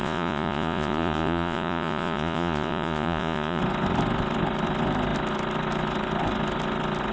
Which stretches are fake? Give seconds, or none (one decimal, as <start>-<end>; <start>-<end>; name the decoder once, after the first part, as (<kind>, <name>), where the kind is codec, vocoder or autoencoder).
0.0-3.6 (vocoder, Vocos)